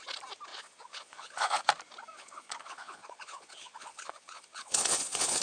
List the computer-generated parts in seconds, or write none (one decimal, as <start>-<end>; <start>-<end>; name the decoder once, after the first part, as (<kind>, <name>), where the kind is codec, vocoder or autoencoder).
0.5-1.6 (vocoder, Vocos); 2.1-5.4